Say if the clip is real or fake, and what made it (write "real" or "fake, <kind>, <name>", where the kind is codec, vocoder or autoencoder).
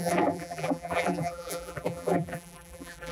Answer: fake, vocoder, BigVGAN v2